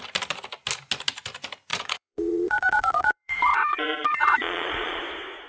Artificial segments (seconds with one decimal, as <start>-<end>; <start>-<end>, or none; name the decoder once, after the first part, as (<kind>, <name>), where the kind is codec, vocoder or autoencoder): 1.7-5.0 (vocoder, Vocos)